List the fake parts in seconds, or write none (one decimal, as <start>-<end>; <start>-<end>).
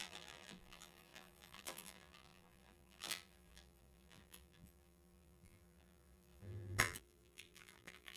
0.0-8.2